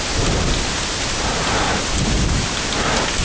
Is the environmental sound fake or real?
real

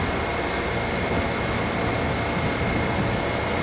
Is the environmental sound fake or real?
real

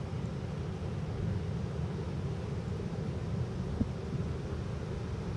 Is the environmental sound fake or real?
real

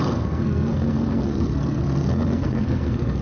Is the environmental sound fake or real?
fake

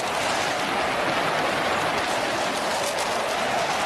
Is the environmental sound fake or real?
real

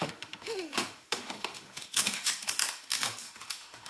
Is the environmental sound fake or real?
fake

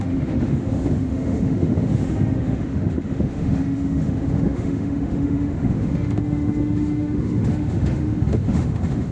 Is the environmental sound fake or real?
fake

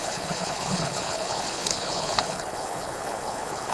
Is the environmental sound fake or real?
fake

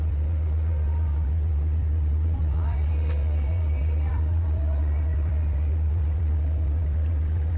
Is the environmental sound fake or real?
fake